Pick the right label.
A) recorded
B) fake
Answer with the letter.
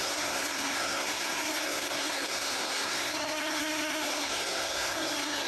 B